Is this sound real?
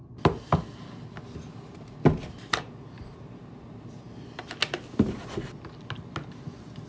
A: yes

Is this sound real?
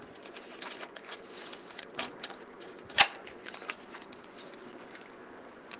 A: no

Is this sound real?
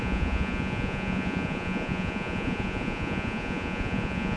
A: no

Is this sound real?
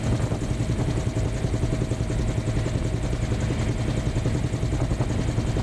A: yes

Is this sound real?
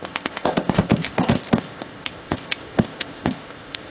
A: no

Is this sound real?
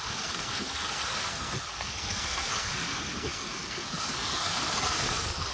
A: no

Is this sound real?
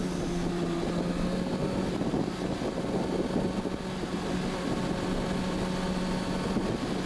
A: yes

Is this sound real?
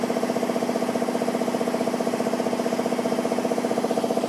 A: yes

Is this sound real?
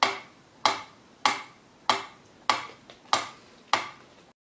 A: yes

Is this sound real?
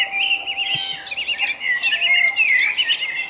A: yes